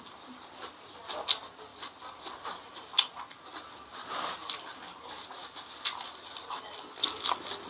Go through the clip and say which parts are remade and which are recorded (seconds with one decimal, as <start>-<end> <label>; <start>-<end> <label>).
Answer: 0.0-7.7 recorded